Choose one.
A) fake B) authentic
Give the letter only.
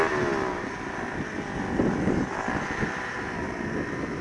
B